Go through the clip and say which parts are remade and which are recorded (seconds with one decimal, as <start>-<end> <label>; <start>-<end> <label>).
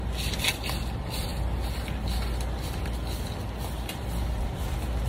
0.0-5.1 recorded